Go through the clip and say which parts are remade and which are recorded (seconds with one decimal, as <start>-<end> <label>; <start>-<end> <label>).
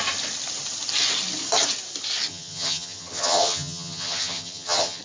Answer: 0.0-2.3 recorded; 2.3-5.0 remade